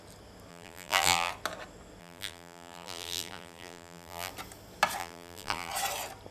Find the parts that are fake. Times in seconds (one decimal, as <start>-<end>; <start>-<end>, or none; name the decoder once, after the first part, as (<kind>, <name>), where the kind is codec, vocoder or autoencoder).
0.5-1.3 (vocoder, BigVGAN v2); 2.0-4.3; 5.0-5.7